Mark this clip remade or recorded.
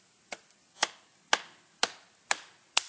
recorded